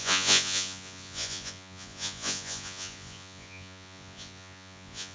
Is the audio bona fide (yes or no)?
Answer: no